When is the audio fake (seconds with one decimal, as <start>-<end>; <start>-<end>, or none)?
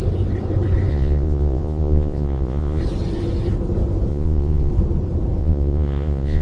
0.9-2.8; 4.1-4.7; 5.4-6.4